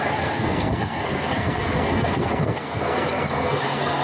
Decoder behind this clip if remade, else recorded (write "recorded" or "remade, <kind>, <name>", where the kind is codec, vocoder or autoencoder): remade, codec, SNAC